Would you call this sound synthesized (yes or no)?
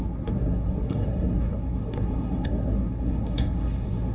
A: yes